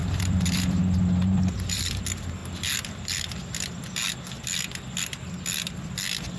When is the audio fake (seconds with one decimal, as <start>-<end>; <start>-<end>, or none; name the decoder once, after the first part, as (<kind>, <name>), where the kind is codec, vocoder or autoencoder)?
0.0-2.0 (vocoder, BigVGAN v2)